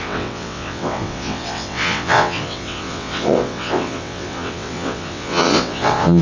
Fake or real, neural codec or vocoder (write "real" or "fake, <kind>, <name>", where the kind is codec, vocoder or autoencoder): fake, vocoder, WaveNeXt